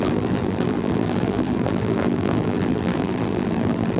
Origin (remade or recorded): remade